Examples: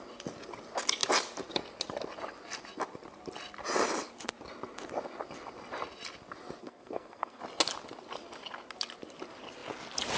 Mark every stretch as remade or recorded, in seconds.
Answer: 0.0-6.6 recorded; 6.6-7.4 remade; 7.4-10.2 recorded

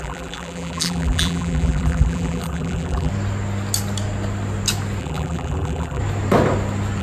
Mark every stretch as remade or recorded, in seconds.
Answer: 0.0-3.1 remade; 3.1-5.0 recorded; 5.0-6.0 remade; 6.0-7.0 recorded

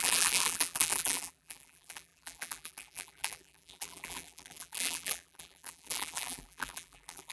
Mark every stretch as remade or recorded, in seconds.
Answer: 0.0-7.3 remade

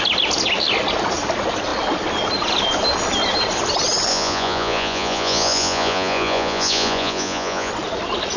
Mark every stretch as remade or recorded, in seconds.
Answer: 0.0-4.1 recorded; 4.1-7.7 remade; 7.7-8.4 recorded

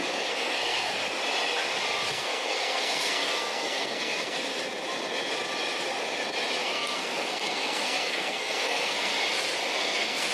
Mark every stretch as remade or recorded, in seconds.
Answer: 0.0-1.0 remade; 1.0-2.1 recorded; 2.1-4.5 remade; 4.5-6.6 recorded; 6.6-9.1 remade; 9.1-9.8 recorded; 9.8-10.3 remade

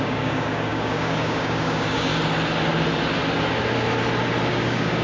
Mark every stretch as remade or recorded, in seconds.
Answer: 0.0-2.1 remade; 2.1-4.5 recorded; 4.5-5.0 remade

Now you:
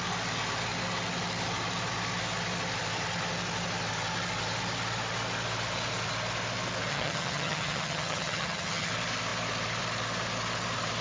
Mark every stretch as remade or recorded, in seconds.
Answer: 0.0-6.9 recorded; 6.9-8.9 remade; 8.9-11.0 recorded